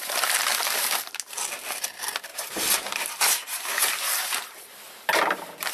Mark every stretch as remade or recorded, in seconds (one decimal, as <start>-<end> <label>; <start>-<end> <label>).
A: 0.0-0.5 recorded; 0.5-1.1 remade; 1.1-2.3 recorded; 2.3-4.6 remade; 4.6-5.7 recorded